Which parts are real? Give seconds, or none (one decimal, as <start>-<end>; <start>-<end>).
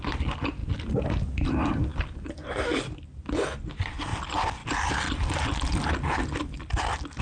0.0-7.2